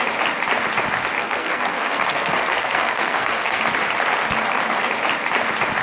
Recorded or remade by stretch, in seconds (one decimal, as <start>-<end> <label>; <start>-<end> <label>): 0.0-1.2 recorded; 1.2-3.6 remade; 3.6-5.8 recorded